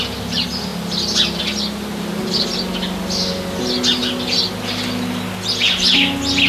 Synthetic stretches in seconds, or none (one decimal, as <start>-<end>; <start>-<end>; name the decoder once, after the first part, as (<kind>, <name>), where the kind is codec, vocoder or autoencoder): none